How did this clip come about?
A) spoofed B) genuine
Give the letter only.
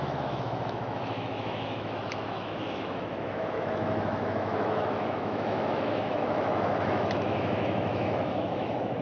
A